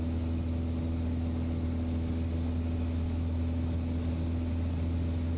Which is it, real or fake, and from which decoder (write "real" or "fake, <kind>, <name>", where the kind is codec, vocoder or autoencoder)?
real